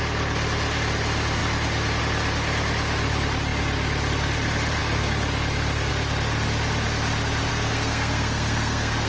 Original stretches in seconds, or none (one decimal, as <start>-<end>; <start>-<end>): 0.0-7.5